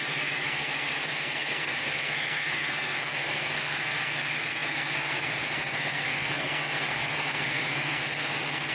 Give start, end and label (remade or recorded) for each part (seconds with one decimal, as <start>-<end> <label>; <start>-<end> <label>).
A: 0.0-8.7 remade